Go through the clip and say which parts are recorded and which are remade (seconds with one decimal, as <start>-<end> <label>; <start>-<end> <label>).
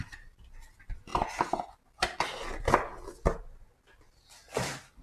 0.0-1.1 remade; 1.1-2.0 recorded; 2.0-5.0 remade